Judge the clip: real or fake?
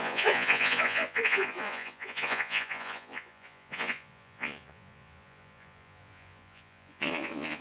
fake